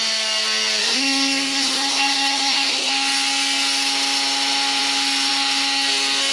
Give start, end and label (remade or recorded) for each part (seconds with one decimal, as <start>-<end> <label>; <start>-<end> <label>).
0.0-0.8 recorded; 0.8-2.9 remade; 2.9-6.3 recorded